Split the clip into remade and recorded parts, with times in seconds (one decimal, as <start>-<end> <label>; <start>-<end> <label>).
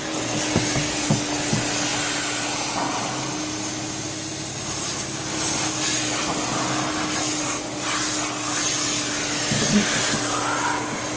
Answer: 0.0-11.2 recorded